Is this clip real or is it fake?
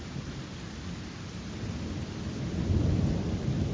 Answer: real